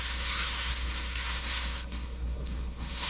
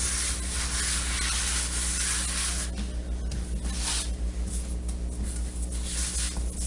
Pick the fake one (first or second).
first